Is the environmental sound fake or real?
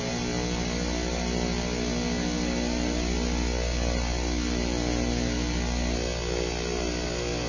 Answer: real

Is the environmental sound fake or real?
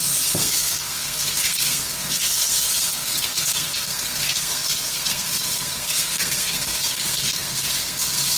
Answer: fake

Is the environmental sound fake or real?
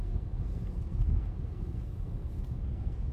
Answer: fake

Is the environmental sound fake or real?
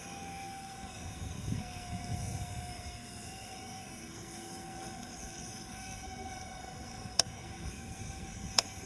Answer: fake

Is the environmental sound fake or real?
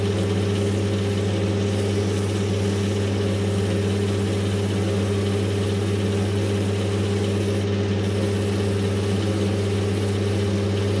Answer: real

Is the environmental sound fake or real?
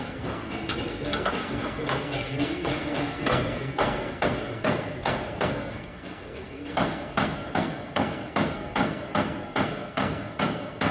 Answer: fake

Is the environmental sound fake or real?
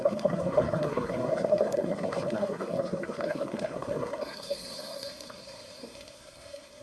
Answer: fake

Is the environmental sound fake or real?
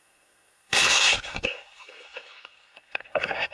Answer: fake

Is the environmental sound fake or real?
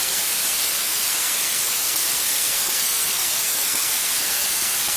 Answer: fake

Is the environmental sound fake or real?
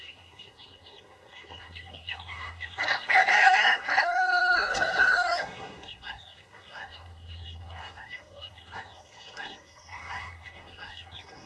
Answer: fake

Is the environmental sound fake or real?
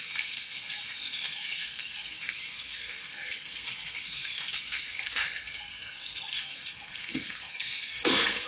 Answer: fake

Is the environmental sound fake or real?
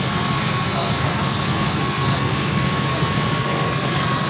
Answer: fake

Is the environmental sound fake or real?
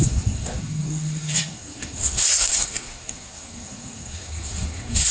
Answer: fake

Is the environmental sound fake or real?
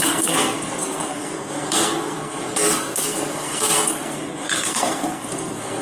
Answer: fake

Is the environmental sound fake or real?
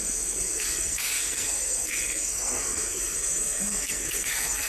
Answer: fake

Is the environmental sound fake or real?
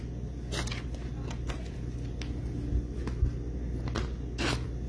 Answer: real